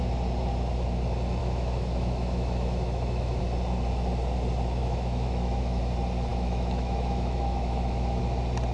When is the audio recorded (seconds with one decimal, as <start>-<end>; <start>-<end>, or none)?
0.0-1.4; 3.4-4.8; 5.8-6.3; 8.2-8.7